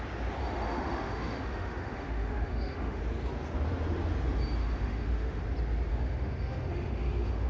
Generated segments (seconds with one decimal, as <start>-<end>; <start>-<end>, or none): 0.4-3.0; 4.6-5.4; 5.9-7.5